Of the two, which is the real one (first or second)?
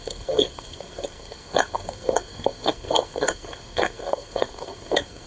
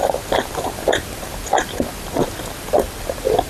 second